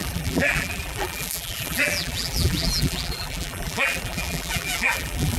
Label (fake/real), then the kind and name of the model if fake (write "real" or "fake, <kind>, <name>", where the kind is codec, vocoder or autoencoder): fake, vocoder, BigVGAN v2